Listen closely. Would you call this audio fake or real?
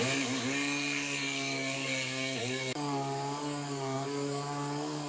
fake